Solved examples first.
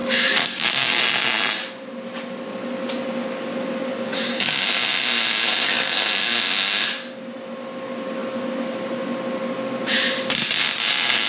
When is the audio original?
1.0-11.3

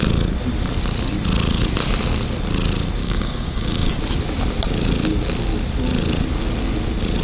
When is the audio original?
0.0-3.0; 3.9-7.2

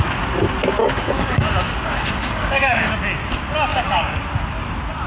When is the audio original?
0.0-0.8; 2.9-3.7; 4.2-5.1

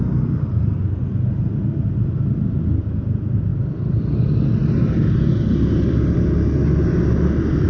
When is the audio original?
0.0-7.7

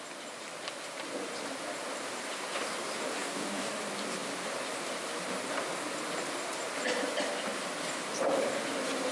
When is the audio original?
0.0-3.2; 3.7-9.1

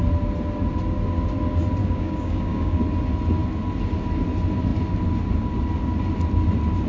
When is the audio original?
0.0-1.8; 2.8-6.9